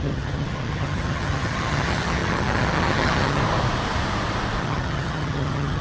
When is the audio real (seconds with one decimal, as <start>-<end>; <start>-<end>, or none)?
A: 3.4-4.6